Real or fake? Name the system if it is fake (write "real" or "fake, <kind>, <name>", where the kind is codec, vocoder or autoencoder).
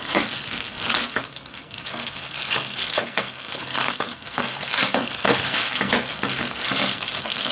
fake, codec, SNAC